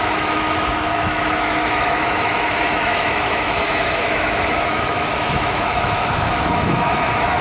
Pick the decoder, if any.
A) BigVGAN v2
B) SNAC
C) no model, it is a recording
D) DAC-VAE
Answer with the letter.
D